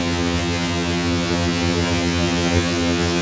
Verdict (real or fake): fake